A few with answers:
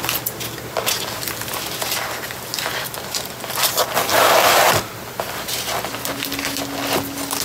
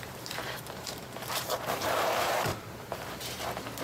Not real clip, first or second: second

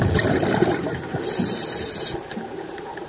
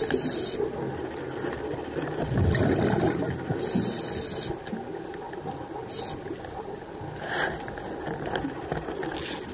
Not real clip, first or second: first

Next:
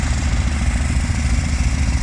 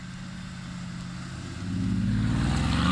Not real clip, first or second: first